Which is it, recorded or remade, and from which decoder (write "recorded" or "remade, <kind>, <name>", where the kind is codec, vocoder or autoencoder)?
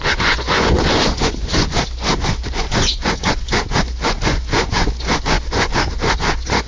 remade, vocoder, Vocos